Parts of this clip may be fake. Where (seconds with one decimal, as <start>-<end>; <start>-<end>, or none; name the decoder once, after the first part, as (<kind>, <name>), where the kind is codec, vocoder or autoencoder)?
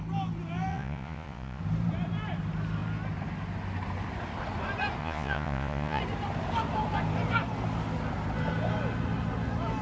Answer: 0.7-1.6 (vocoder, Vocos); 5.0-6.0